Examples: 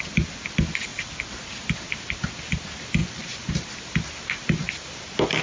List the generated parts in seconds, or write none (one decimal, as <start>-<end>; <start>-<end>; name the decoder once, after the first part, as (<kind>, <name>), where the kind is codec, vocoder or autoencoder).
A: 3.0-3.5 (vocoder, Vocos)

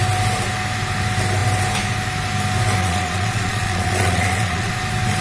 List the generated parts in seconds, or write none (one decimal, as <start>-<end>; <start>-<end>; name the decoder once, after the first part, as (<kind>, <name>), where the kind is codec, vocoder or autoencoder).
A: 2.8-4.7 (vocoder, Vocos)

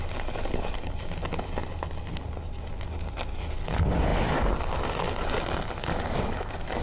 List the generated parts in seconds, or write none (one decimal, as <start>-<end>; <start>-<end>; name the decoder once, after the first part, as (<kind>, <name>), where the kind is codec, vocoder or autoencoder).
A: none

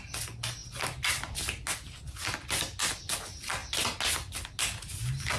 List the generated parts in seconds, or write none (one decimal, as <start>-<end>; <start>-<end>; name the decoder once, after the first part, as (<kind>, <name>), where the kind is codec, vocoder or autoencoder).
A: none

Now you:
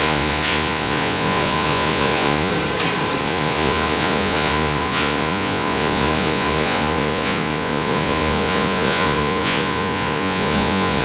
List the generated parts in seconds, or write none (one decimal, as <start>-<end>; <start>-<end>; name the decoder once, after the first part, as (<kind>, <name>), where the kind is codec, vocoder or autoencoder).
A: 0.0-2.5 (vocoder, Vocos); 3.2-11.0

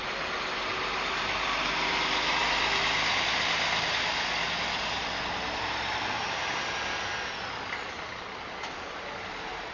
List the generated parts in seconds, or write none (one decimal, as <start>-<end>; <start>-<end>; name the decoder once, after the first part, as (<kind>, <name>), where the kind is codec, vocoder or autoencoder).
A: none

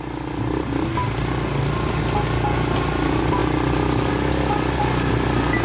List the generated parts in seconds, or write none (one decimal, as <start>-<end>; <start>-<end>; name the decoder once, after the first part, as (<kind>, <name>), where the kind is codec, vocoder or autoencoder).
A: none

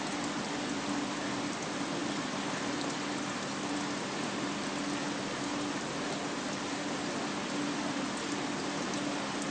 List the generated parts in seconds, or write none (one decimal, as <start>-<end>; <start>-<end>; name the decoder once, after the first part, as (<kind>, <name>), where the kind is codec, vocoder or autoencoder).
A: none